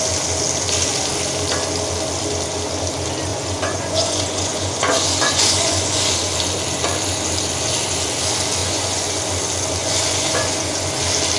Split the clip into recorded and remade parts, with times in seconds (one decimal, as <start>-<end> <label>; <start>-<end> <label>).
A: 0.0-3.3 recorded; 3.3-6.1 remade; 6.1-8.6 recorded; 8.6-9.2 remade; 9.2-9.8 recorded; 9.8-11.0 remade; 11.0-11.4 recorded